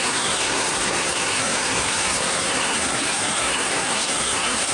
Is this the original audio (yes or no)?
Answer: no